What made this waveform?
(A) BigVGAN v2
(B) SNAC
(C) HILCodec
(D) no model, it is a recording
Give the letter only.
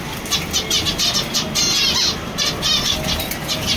D